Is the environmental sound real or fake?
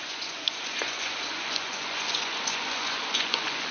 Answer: fake